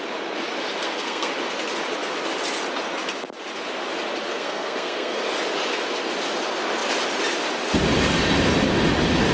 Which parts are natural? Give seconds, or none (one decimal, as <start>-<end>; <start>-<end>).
0.0-0.8; 1.3-4.3; 5.3-9.3